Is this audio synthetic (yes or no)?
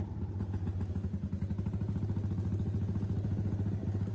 no